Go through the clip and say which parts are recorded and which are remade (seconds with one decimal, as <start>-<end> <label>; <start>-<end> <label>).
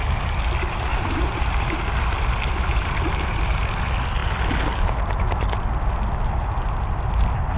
0.0-0.9 recorded; 0.9-2.0 remade; 2.0-2.7 recorded; 2.7-3.7 remade; 3.7-7.6 recorded